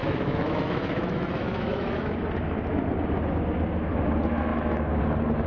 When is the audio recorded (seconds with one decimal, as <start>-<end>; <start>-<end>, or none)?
2.1-4.5; 5.0-5.5